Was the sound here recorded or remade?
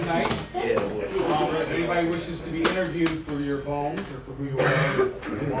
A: recorded